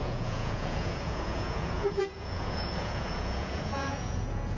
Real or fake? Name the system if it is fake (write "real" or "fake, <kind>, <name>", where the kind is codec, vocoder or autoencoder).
fake, vocoder, Vocos